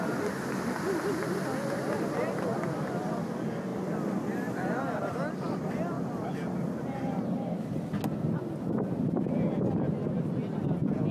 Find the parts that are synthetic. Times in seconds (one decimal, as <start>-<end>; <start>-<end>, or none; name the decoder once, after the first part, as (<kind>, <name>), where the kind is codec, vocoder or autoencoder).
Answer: 2.5-3.3 (vocoder, BigVGAN v2); 3.7-6.3